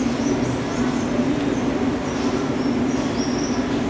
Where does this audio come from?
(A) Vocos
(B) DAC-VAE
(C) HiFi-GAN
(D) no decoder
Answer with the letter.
D